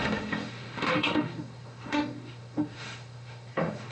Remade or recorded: remade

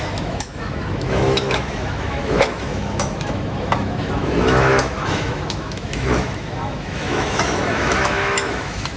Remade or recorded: remade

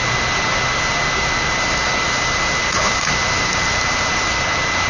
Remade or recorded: recorded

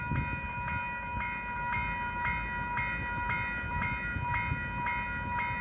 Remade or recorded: recorded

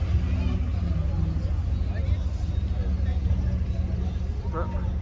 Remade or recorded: recorded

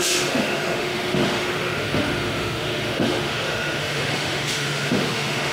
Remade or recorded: remade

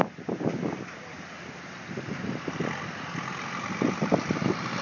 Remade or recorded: recorded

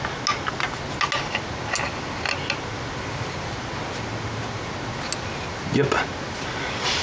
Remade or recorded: recorded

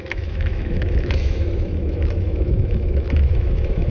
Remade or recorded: remade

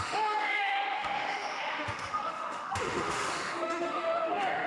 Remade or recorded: remade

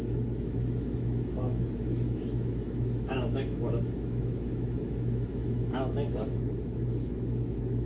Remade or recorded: remade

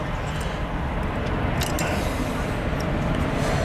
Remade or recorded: recorded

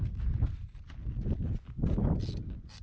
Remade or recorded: recorded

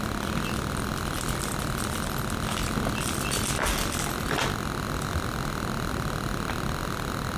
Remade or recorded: recorded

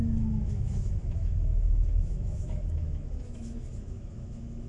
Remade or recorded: remade